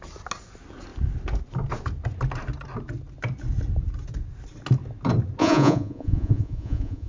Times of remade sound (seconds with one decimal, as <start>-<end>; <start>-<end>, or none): 5.4-7.1